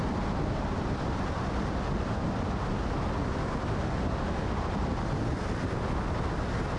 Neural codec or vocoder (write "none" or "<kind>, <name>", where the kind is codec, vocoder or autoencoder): none